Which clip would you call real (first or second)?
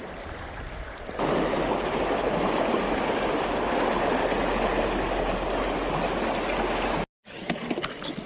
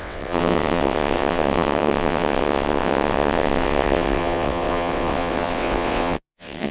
first